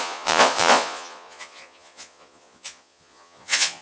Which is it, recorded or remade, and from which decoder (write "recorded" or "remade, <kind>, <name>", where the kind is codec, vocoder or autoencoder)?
remade, vocoder, Vocos